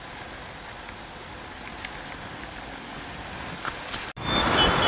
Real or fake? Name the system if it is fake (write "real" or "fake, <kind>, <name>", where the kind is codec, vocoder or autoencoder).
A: real